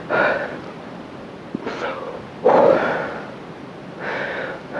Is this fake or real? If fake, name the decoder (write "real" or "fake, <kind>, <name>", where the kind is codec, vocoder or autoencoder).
real